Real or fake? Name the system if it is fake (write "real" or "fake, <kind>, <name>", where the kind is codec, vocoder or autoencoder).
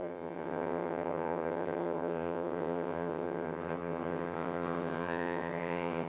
fake, vocoder, HiFi-GAN